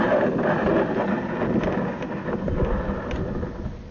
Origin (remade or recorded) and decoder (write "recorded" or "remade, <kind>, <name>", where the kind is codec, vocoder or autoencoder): recorded